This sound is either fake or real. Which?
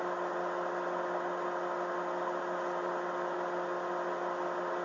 real